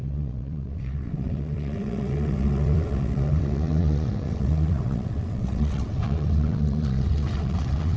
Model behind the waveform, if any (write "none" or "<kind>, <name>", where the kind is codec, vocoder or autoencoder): vocoder, WaveNeXt